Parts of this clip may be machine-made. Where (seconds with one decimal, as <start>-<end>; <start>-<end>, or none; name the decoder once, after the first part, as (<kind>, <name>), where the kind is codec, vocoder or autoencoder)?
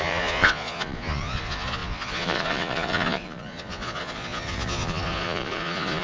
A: 0.0-6.0 (vocoder, Vocos)